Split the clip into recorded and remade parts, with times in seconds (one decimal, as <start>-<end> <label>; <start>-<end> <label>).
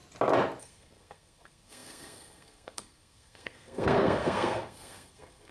0.0-0.6 recorded; 0.6-5.5 remade